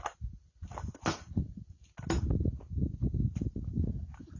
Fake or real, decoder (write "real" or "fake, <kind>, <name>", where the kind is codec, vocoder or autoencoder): real